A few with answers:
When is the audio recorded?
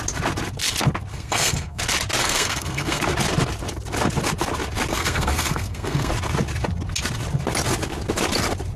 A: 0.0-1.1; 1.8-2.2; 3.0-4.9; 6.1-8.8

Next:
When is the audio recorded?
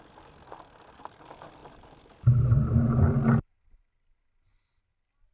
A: 0.0-5.3